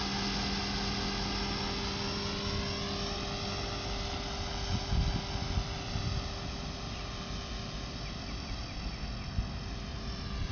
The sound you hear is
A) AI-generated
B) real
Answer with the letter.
B